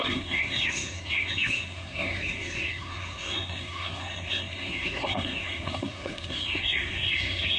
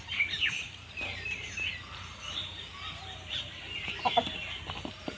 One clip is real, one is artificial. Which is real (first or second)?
second